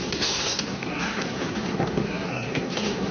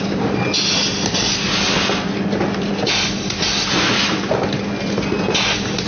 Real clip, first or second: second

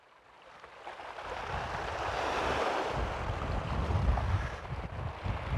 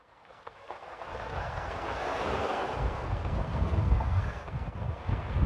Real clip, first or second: first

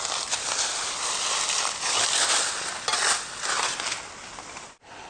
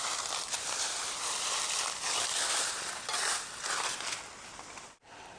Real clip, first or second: first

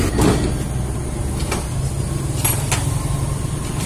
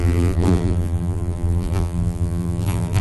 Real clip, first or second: first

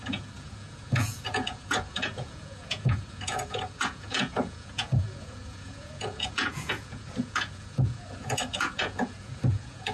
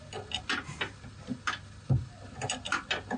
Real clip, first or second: second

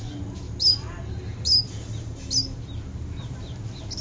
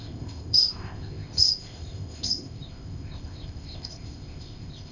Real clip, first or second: first